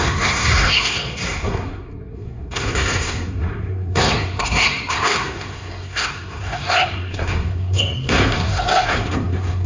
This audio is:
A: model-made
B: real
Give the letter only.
A